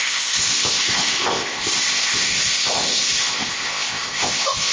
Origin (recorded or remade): remade